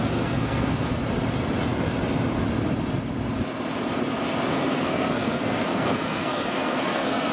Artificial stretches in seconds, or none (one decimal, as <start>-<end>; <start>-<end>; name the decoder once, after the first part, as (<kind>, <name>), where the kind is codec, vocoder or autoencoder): 0.0-1.0 (codec, SNAC); 4.5-7.3